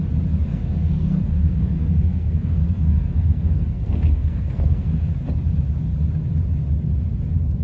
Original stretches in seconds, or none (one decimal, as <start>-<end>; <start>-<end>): 0.0-0.5; 5.1-7.6